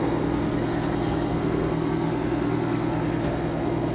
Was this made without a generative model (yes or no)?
no